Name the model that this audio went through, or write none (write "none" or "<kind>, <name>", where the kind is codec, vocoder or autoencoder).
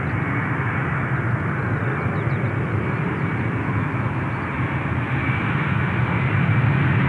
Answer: none